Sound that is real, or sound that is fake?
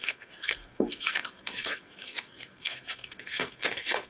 fake